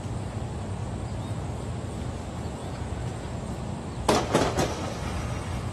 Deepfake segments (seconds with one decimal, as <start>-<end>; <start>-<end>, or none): 2.6-3.4

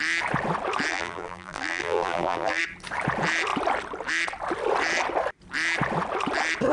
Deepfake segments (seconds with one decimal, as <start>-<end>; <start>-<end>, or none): 0.9-2.6

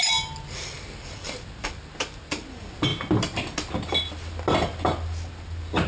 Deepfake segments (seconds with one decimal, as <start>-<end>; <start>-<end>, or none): none

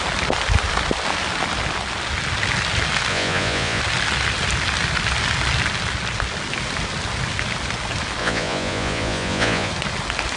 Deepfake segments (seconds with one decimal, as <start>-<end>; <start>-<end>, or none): 3.1-3.8; 8.2-9.7

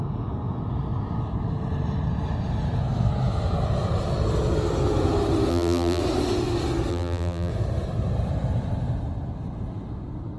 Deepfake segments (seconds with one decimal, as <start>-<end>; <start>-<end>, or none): 5.5-6.0; 6.9-7.5